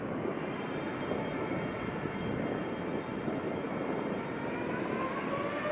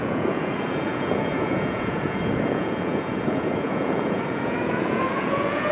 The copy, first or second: second